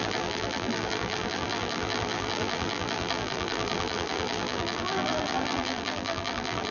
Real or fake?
fake